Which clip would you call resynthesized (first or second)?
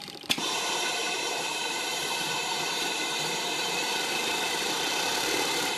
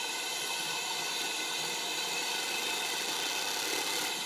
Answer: first